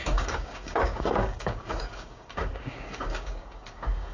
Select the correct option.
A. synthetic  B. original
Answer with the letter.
A